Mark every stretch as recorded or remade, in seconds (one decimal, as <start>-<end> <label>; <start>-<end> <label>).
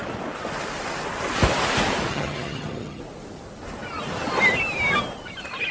0.0-2.1 recorded; 2.1-3.0 remade; 3.0-5.7 recorded